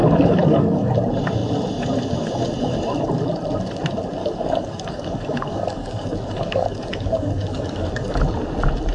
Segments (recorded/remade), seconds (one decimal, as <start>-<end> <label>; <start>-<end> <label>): 0.0-0.9 remade; 0.9-4.2 recorded; 4.2-8.2 remade; 8.2-8.9 recorded